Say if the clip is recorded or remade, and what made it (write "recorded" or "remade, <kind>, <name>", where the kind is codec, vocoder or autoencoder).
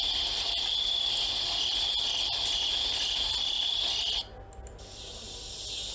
recorded